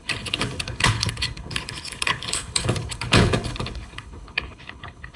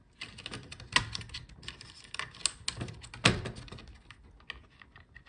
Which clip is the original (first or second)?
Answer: second